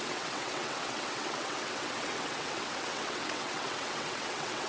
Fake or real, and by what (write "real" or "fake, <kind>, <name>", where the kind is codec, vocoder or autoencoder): fake, vocoder, WaveNeXt